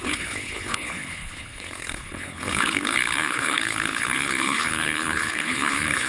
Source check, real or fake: fake